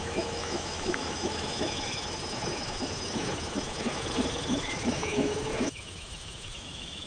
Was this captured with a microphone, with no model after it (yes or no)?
no